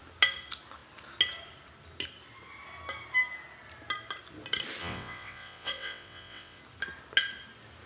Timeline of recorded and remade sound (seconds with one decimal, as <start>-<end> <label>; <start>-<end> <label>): 0.0-4.8 recorded; 4.8-6.6 remade; 6.6-7.9 recorded